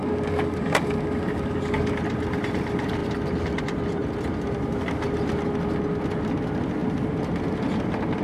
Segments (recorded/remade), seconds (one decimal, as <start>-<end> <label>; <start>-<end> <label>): 0.0-2.0 remade; 2.0-8.2 recorded